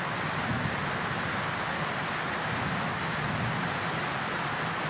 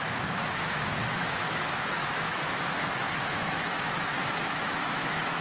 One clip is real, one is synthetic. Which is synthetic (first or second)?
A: second